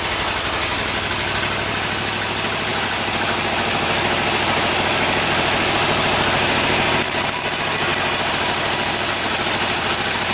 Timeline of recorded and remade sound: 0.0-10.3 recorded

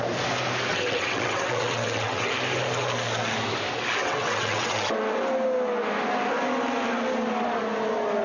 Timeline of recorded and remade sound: 0.0-0.7 recorded; 0.7-2.3 remade; 2.3-4.0 recorded; 4.0-5.0 remade; 5.0-8.2 recorded